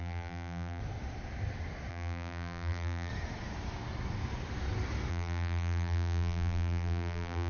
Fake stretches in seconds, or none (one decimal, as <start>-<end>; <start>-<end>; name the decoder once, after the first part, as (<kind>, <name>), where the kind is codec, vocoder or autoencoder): 0.0-0.8 (vocoder, BigVGAN v2); 1.9-3.1; 5.1-7.5